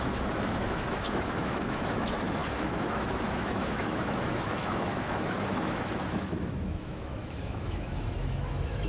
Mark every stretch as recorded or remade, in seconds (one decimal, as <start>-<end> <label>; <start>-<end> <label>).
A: 0.0-8.9 remade